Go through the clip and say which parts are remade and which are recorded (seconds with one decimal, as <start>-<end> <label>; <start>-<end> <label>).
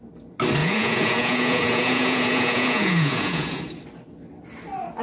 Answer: 0.0-0.6 recorded; 0.6-3.6 remade; 3.6-5.0 recorded